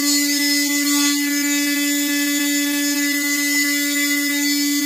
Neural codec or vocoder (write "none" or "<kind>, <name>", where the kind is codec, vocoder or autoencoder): none